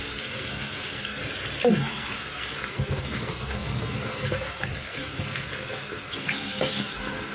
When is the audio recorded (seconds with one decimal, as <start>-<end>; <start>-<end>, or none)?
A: 1.2-1.7